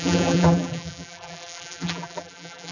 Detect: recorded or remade remade